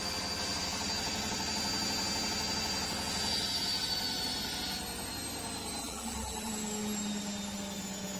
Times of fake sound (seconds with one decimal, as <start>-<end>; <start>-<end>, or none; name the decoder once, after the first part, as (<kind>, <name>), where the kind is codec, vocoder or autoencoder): 5.8-6.5 (vocoder, BigVGAN v2)